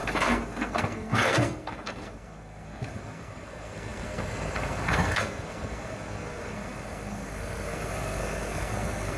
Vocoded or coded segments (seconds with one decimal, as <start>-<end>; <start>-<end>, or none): 0.0-9.2